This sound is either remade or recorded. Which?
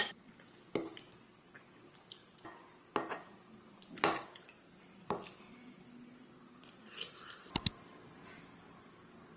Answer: recorded